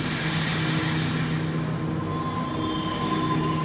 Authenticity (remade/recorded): recorded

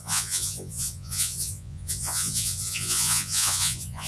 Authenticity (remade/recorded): remade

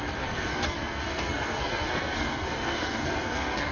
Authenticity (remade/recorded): remade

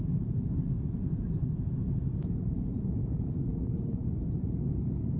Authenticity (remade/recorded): remade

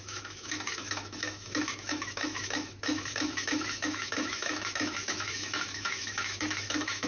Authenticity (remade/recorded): remade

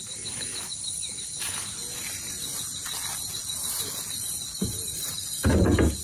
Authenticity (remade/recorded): recorded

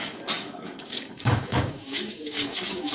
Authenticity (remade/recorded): remade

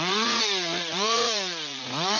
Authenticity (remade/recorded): remade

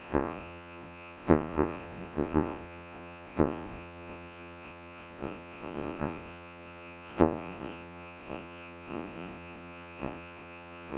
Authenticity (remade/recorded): remade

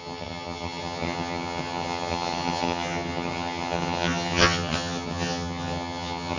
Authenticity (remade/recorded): remade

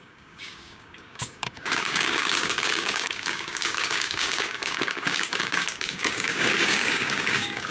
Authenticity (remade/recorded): remade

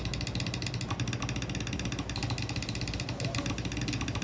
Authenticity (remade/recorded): recorded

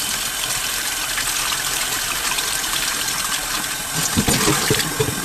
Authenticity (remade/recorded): remade